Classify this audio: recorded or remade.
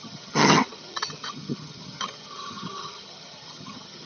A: remade